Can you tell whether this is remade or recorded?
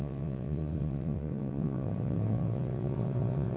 remade